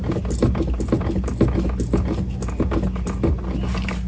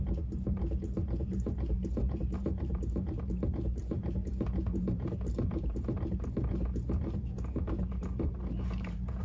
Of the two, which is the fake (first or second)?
second